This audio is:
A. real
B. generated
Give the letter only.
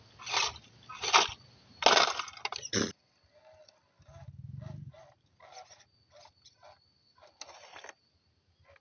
A